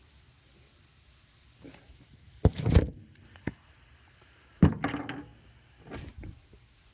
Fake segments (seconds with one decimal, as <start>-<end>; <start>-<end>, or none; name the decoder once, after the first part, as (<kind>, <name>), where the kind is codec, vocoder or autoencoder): 1.7-4.7 (vocoder, BigVGAN v2)